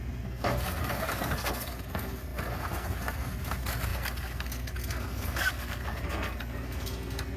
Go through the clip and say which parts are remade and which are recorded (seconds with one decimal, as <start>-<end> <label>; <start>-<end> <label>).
0.0-7.4 remade